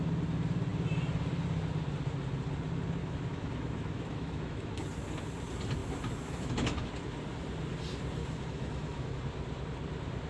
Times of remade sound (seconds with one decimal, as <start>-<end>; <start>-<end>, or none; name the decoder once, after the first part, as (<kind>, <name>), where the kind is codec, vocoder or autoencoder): 3.0-4.7 (autoencoder, DAC-VAE); 5.8-6.9; 8.2-9.2